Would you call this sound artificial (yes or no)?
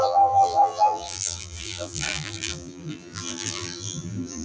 yes